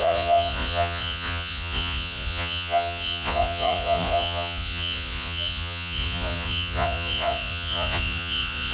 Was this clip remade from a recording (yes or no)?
yes